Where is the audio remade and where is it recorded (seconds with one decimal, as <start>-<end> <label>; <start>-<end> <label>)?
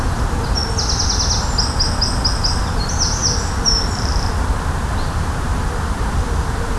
0.0-0.6 remade; 0.6-2.3 recorded; 2.3-6.8 remade